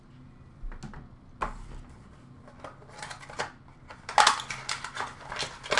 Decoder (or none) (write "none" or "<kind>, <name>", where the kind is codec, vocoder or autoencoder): none